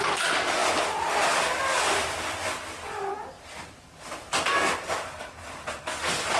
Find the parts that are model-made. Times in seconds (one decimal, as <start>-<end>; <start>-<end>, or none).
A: 0.0-2.4; 5.8-6.4